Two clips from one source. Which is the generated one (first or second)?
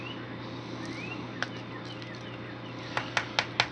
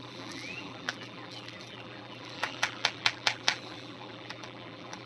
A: second